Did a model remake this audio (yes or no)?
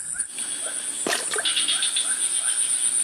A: no